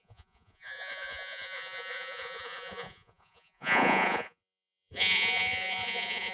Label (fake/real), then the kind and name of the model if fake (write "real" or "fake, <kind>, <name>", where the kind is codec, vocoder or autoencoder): fake, vocoder, Vocos